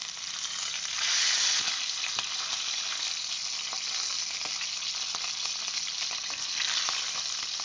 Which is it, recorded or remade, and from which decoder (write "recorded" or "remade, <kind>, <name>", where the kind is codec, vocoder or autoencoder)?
recorded